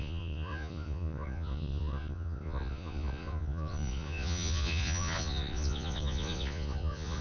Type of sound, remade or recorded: remade